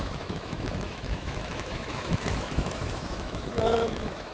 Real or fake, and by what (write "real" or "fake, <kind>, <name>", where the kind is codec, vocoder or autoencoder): fake, autoencoder, DAC-VAE